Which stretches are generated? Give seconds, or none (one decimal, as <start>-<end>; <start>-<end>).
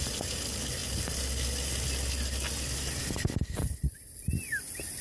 none